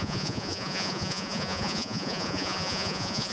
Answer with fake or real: fake